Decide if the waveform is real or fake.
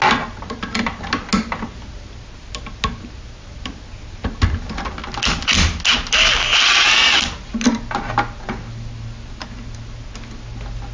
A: real